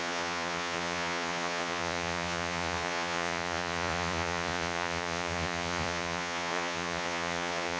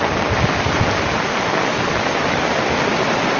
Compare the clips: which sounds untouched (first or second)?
second